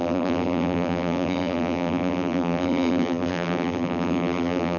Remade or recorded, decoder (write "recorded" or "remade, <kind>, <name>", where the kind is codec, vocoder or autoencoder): remade, vocoder, BigVGAN v2